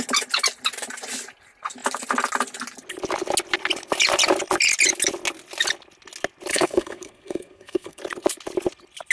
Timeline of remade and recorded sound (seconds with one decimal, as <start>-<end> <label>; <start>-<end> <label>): 0.0-6.5 recorded; 6.5-8.0 remade; 8.0-9.1 recorded